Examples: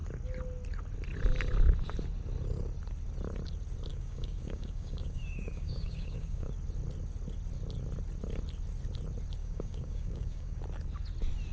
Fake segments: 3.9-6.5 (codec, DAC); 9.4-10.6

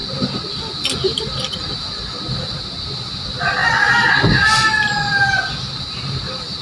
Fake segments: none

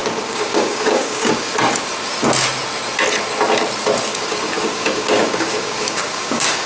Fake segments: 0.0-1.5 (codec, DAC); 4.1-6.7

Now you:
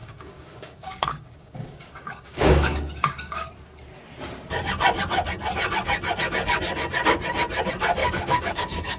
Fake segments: 0.0-3.5 (codec, DAC); 8.0-9.0

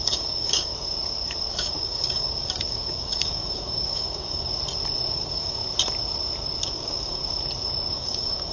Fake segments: 0.0-0.7 (codec, DAC); 1.5-4.5; 5.1-5.6; 6.7-7.2; 7.9-8.5

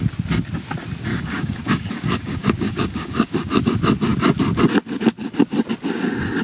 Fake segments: 1.1-3.6 (codec, DAC)